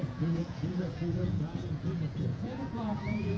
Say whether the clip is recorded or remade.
remade